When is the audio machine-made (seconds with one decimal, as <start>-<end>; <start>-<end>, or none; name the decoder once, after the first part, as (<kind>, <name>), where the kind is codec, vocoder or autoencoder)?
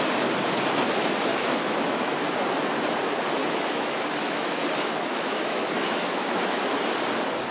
1.3-2.0 (autoencoder, DAC-VAE); 3.4-6.8